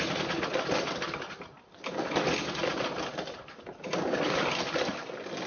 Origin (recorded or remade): recorded